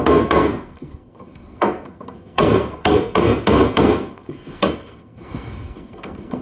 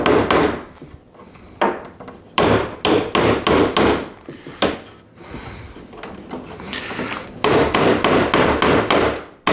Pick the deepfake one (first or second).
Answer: first